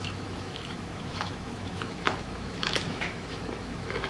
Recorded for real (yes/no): no